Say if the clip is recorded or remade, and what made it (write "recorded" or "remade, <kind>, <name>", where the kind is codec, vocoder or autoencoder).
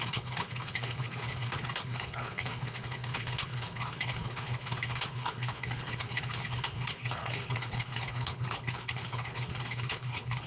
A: remade, codec, HILCodec